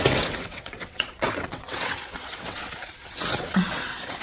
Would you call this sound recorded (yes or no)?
no